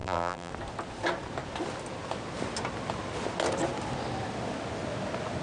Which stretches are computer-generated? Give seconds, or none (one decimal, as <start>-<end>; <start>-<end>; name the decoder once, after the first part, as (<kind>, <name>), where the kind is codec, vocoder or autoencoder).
0.0-0.5 (vocoder, BigVGAN v2)

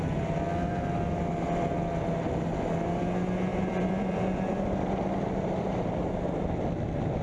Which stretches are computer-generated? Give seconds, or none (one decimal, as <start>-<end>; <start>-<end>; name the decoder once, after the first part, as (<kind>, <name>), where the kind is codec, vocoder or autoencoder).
3.5-6.1 (vocoder, BigVGAN v2)

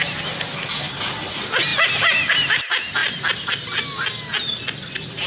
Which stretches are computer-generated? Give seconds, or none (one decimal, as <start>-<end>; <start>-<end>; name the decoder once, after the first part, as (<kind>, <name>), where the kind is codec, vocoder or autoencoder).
1.7-2.6 (vocoder, BigVGAN v2)

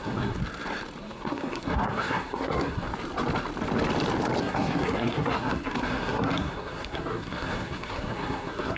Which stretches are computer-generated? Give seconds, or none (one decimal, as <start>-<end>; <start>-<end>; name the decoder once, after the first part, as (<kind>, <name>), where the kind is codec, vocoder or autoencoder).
0.0-0.4 (codec, SNAC); 1.0-2.9; 4.4-8.8